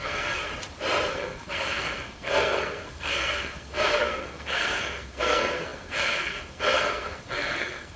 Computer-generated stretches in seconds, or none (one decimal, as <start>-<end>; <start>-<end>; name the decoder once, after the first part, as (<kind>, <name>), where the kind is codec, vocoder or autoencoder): 0.0-0.5 (codec, SNAC); 1.1-8.0